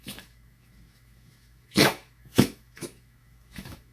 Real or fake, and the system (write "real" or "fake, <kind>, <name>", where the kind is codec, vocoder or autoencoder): fake, autoencoder, DAC-VAE